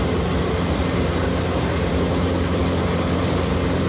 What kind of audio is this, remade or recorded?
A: recorded